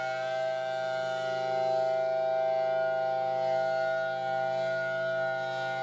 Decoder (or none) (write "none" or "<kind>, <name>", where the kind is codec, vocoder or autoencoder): none